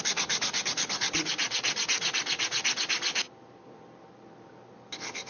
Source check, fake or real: real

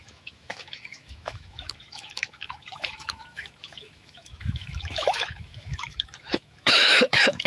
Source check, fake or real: fake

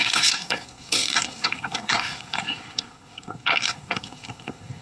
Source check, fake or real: fake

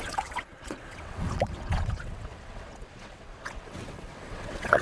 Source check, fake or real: fake